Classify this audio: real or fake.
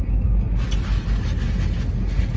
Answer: real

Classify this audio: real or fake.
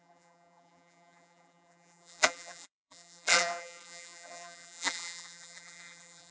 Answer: fake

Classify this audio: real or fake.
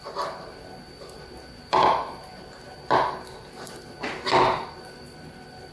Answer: real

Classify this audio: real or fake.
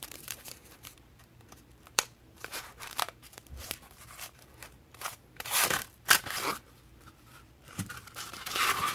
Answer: fake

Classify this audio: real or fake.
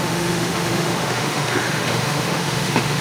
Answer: fake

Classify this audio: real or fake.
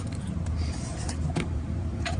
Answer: fake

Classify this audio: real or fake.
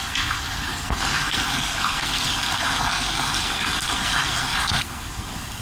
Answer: fake